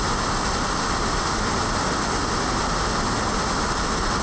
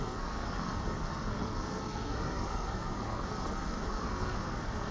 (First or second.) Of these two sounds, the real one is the first